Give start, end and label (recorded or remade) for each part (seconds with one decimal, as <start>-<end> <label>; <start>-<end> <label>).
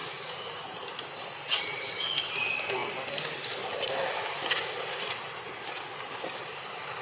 0.0-1.0 remade; 1.0-1.5 recorded; 1.5-2.1 remade; 2.1-7.0 recorded